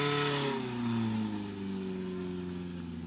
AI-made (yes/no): no